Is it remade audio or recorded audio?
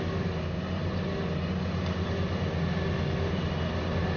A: recorded